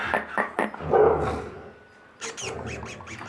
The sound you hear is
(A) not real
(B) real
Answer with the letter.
B